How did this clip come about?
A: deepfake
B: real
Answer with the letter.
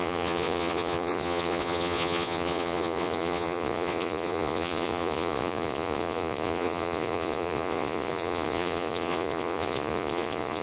A